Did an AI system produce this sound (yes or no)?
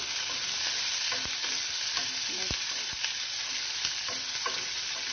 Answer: no